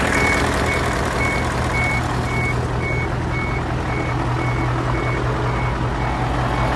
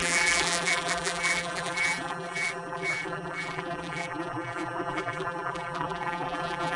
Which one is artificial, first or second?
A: second